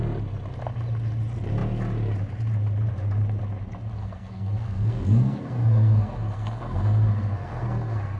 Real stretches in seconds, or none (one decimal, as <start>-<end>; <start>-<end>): 0.0-4.0